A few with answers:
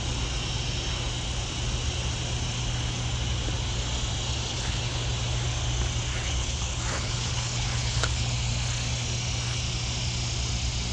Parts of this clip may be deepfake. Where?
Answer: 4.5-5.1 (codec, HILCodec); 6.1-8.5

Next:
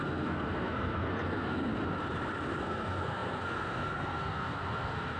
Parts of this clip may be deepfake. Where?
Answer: 0.0-1.7 (codec, SNAC); 2.6-5.2